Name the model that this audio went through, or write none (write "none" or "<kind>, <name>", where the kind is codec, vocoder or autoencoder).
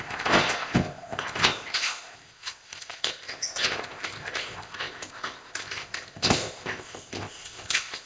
codec, ZipCodec